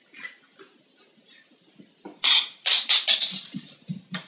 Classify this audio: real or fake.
real